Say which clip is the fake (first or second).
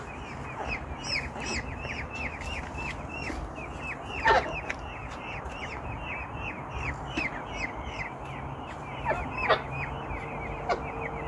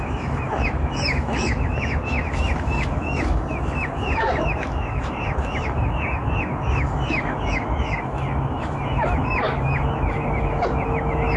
second